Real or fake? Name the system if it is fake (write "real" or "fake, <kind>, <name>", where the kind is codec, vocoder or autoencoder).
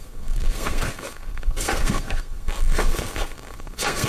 fake, codec, SNAC